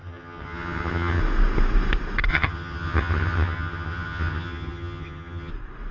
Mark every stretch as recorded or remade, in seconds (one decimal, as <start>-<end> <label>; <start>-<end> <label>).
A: 0.0-1.2 remade; 1.2-2.3 recorded; 2.3-5.5 remade; 5.5-5.9 recorded